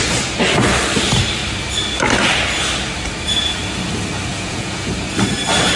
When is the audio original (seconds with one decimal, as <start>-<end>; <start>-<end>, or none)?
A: 0.0-4.3; 4.9-5.8